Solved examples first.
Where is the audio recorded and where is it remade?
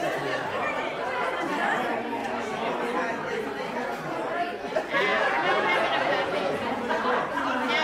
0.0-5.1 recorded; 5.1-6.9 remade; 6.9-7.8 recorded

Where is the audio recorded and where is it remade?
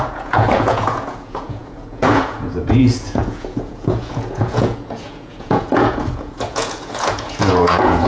0.0-8.1 remade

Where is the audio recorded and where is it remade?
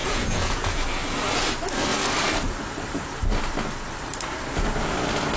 0.0-0.8 remade; 0.8-5.4 recorded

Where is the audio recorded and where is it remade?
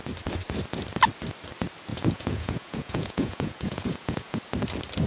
0.0-1.9 recorded; 1.9-4.4 remade; 4.4-5.1 recorded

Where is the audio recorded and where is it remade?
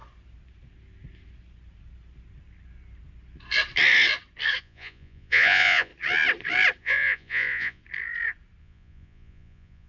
0.0-4.6 recorded; 4.6-5.9 remade; 5.9-6.8 recorded; 6.8-7.8 remade; 7.8-8.6 recorded; 8.6-9.9 remade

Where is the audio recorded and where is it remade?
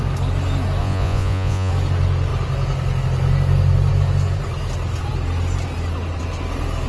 0.0-0.8 recorded; 0.8-1.7 remade; 1.7-6.9 recorded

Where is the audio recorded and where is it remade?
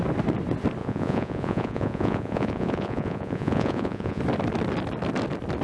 0.0-0.8 recorded; 0.8-4.2 remade; 4.2-5.6 recorded